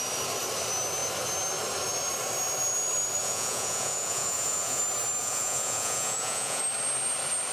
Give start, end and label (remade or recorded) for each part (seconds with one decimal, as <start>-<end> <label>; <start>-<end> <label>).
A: 0.0-3.2 recorded; 3.2-4.8 remade; 4.8-5.2 recorded; 5.2-6.6 remade; 6.6-7.5 recorded